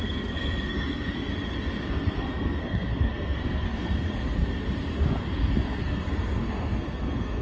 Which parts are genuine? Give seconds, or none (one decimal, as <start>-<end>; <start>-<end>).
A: 1.3-1.9; 4.4-5.8